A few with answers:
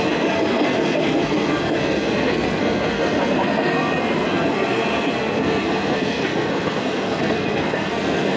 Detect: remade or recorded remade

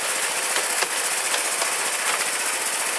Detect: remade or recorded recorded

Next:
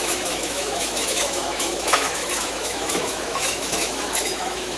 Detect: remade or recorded remade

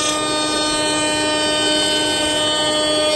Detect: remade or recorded recorded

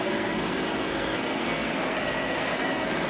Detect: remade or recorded remade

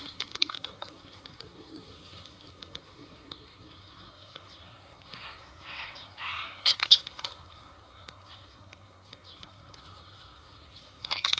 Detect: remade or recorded remade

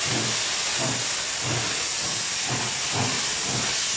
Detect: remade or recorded recorded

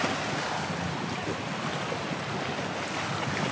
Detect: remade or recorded recorded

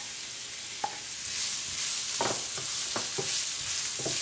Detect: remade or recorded recorded